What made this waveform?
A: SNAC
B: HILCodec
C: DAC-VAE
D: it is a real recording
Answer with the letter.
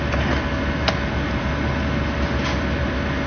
D